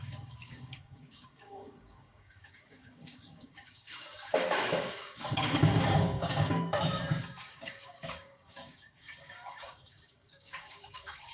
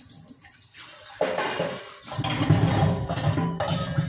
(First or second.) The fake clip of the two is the first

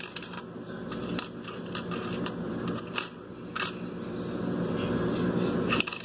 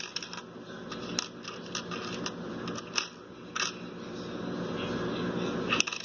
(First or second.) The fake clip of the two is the first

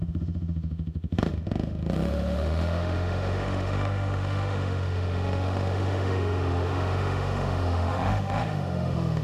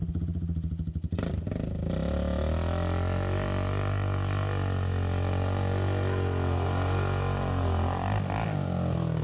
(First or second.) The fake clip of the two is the first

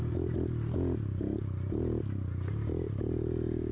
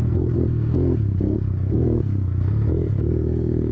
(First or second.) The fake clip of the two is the second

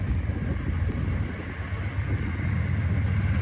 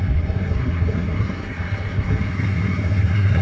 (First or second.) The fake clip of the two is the second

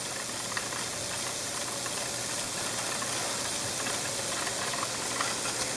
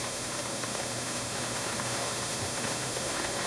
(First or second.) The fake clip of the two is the second